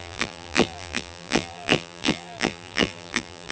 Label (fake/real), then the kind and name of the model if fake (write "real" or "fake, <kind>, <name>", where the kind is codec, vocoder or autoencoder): fake, vocoder, BigVGAN v2